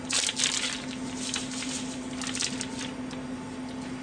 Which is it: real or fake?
real